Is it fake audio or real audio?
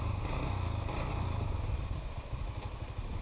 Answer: real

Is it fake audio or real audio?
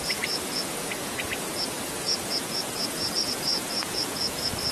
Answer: fake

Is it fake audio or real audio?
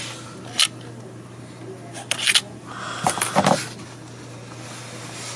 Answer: real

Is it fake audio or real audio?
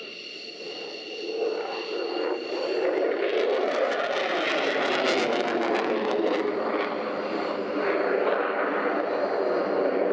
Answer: real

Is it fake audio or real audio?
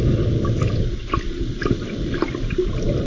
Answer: real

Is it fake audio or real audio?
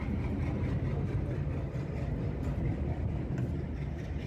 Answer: real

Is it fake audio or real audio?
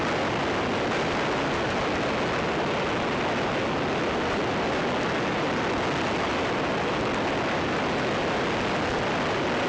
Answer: real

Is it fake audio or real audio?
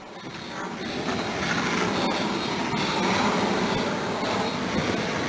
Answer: real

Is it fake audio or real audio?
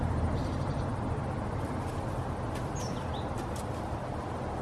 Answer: real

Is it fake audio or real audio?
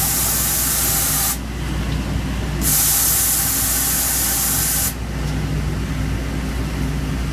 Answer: real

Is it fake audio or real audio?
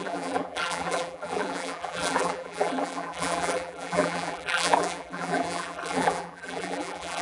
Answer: fake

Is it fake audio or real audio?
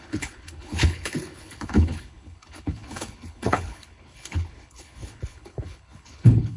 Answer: fake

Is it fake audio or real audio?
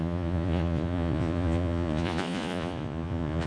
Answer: fake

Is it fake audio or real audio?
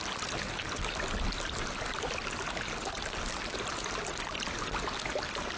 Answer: real